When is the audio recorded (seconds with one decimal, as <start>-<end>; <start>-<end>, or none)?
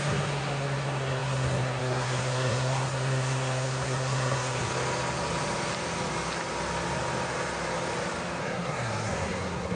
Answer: 4.7-8.4